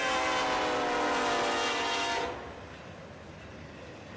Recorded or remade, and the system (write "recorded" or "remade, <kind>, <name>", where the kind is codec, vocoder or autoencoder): recorded